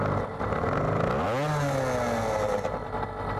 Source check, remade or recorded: recorded